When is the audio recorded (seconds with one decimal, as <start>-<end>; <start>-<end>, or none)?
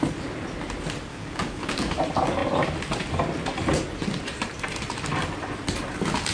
0.0-1.1; 2.0-6.3